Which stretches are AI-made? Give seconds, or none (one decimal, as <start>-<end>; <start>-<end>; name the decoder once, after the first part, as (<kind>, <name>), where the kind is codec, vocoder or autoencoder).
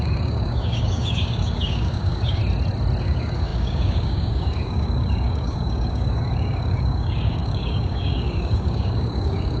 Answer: 0.0-2.4 (codec, DAC); 3.0-9.6